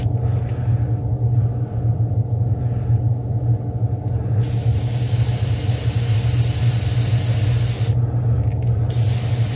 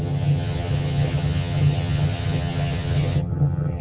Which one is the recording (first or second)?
first